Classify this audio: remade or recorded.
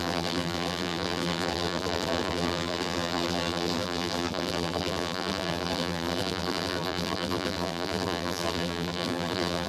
remade